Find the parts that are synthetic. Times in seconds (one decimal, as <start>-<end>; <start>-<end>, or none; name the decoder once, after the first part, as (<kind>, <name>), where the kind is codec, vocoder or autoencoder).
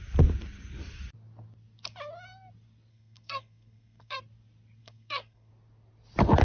2.9-4.2 (codec, SNAC); 4.8-5.5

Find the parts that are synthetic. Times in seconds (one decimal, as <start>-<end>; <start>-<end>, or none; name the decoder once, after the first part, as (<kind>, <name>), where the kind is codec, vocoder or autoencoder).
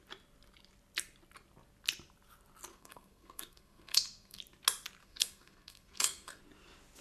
2.7-4.4 (codec, SNAC); 5.0-6.4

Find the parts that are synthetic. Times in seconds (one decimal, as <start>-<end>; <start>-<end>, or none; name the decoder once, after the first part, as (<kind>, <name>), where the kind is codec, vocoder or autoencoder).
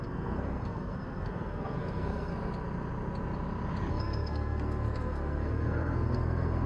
0.0-2.3 (codec, SNAC); 3.9-6.7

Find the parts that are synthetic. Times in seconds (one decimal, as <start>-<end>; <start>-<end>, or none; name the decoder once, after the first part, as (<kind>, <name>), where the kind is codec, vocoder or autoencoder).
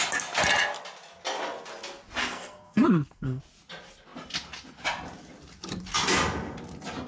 2.2-3.4 (codec, SNAC)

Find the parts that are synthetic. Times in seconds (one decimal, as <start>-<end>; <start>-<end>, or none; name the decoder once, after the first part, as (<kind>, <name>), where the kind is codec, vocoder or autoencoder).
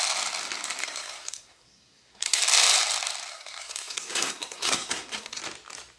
0.8-2.4 (codec, SNAC); 3.3-5.4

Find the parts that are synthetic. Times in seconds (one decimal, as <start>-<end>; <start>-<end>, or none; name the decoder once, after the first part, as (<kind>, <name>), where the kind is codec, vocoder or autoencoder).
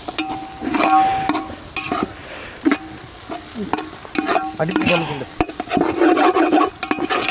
none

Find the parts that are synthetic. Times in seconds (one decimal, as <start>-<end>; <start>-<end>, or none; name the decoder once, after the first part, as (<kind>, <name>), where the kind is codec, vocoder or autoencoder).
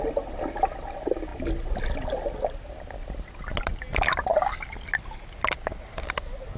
none